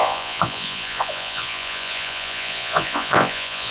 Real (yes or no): no